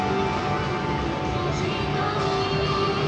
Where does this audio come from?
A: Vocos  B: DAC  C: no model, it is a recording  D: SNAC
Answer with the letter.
C